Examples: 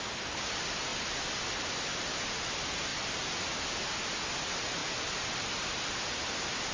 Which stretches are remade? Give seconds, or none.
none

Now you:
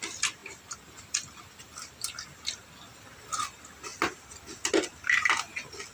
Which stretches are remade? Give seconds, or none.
0.4-1.7 (vocoder, BigVGAN v2)

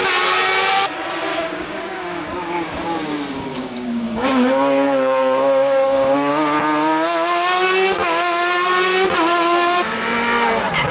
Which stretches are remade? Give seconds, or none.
1.3-2.7 (codec, DAC); 3.5-6.3

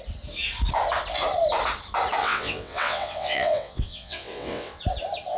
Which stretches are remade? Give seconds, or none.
2.2-4.8 (vocoder, WaveNeXt)

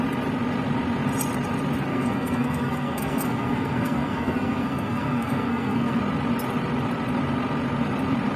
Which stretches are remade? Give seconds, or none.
1.9-6.0 (codec, SNAC)

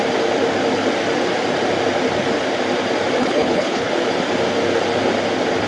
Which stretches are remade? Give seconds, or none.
3.2-3.9 (codec, HILCodec)